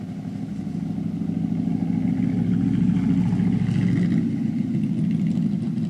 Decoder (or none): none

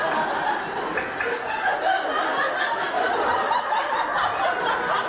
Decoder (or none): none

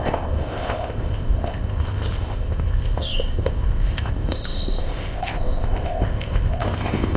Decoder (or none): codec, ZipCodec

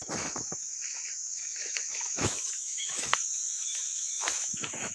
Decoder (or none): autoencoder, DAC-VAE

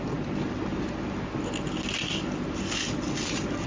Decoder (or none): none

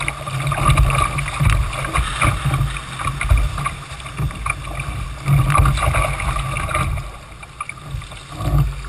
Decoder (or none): none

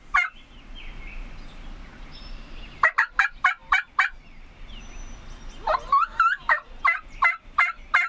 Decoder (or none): none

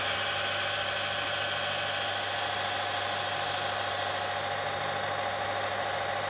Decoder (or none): none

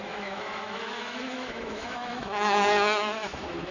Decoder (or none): autoencoder, DAC-VAE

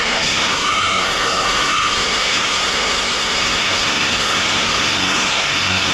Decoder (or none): codec, SNAC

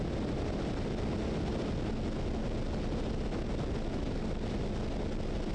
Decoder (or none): none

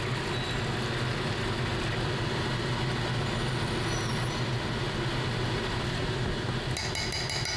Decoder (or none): none